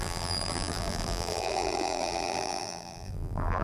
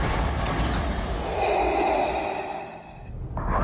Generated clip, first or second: first